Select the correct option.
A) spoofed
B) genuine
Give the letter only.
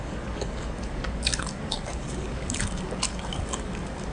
A